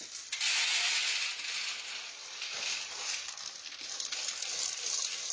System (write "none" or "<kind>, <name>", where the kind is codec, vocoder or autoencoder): none